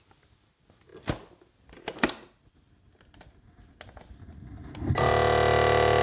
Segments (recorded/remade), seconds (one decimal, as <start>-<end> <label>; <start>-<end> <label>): 0.0-6.0 recorded